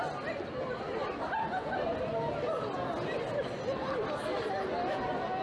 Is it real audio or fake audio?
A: real